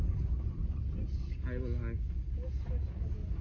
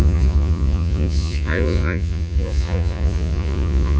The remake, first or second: second